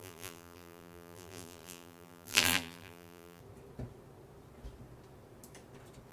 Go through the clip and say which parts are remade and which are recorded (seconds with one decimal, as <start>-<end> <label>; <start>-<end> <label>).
0.0-3.4 remade; 3.4-6.1 recorded